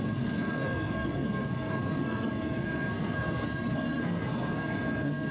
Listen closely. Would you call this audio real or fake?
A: fake